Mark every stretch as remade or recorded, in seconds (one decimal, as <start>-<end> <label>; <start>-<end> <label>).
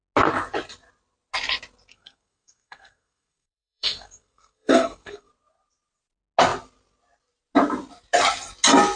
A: 0.0-1.9 recorded; 1.9-5.3 remade; 5.3-9.0 recorded